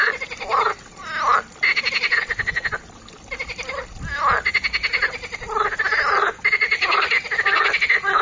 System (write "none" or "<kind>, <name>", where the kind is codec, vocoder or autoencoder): none